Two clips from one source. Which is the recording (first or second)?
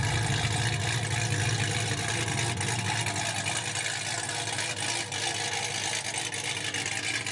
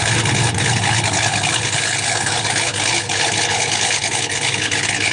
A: first